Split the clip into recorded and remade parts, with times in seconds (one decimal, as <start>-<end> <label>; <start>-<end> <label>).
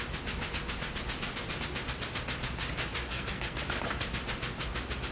0.0-3.1 recorded; 3.1-3.6 remade; 3.6-5.1 recorded